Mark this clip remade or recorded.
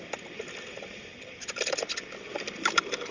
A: recorded